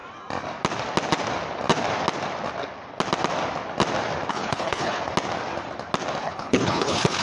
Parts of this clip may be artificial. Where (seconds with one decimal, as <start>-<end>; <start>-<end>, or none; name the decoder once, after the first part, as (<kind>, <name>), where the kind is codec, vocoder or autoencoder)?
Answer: 4.3-5.0 (codec, HILCodec); 6.2-7.2